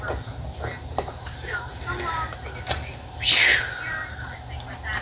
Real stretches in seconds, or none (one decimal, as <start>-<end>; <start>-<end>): 0.0-0.7; 1.8-5.0